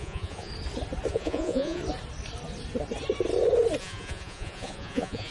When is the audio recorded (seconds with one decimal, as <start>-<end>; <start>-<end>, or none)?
0.5-1.1; 1.8-3.8